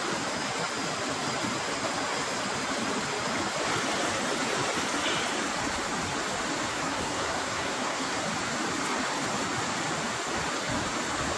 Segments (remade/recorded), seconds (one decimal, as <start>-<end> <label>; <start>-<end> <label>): 0.0-6.7 recorded; 6.7-8.2 remade; 8.2-11.4 recorded